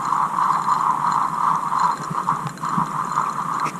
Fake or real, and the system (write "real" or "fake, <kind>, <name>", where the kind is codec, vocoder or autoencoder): real